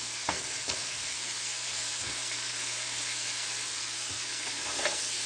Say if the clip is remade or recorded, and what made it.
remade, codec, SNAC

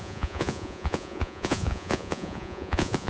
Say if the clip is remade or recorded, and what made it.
remade, vocoder, Vocos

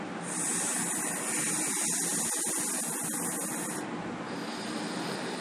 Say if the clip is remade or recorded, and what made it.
recorded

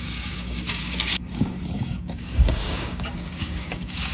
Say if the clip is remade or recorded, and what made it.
remade, codec, DAC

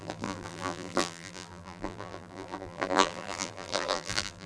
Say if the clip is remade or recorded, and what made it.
remade, vocoder, BigVGAN v2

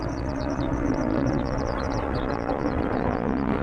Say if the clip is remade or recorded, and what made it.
remade, vocoder, WaveNeXt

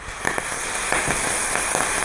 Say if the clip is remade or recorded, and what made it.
recorded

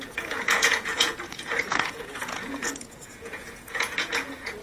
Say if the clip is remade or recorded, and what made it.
remade, vocoder, Vocos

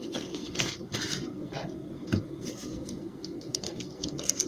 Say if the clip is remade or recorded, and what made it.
remade, codec, SNAC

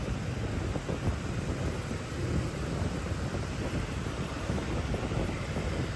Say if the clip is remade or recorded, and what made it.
recorded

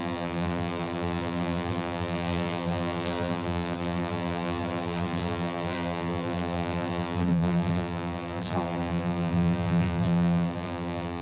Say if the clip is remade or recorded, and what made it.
remade, vocoder, BigVGAN v2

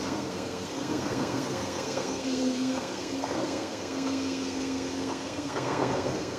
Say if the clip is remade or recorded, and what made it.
remade, codec, SNAC